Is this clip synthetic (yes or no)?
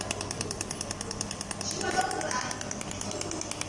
no